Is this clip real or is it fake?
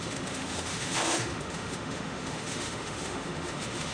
fake